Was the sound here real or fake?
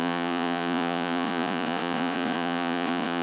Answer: fake